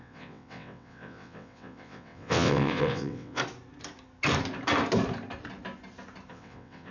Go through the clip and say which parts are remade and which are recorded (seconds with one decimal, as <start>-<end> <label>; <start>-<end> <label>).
0.0-3.4 remade; 3.4-6.3 recorded; 6.3-6.9 remade